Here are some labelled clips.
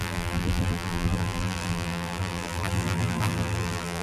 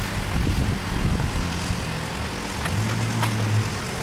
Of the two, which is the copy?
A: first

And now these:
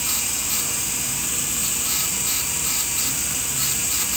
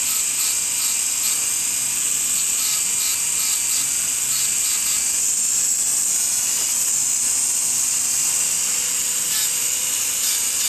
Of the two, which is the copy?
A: first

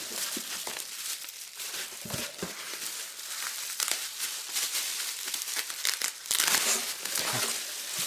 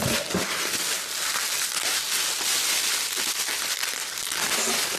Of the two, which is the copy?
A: first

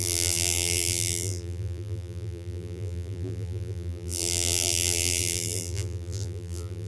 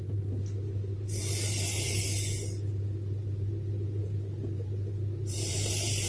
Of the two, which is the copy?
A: first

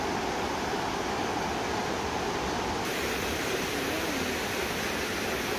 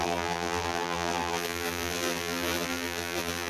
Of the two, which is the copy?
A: second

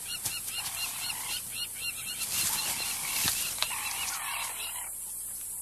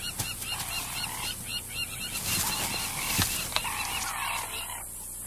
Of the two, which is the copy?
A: first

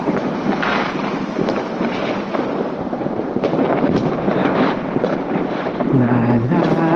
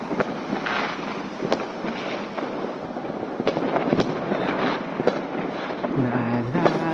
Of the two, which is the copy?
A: first